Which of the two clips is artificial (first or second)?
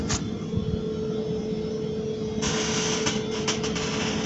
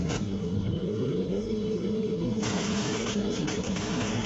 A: second